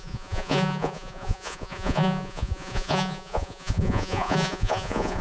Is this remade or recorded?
remade